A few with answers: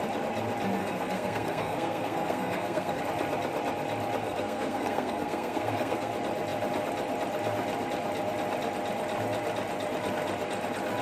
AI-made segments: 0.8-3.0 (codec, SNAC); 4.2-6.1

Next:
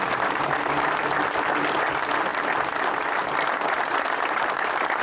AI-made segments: 2.3-5.0 (vocoder, BigVGAN v2)